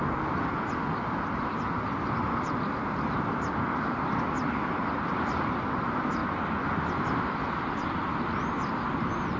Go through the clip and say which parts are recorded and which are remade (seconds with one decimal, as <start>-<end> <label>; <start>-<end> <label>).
0.0-9.4 recorded